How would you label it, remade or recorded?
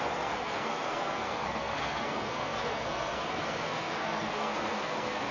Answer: remade